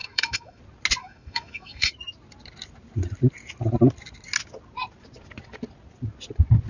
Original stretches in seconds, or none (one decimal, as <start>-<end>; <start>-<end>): 0.6-1.0; 1.9-6.7